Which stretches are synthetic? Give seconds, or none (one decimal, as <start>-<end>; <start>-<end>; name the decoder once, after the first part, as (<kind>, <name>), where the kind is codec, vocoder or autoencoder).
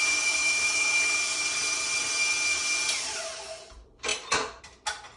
0.4-0.9 (autoencoder, DAC-VAE)